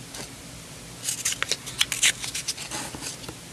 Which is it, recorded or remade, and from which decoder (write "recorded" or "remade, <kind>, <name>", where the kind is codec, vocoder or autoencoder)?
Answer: recorded